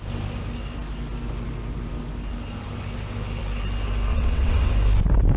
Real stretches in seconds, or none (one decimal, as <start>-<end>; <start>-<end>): 0.0-4.1; 4.7-5.4